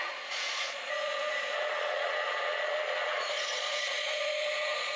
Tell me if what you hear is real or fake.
fake